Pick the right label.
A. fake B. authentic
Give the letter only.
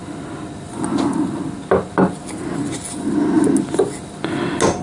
B